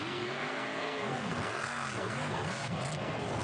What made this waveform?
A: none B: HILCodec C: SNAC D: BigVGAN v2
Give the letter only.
C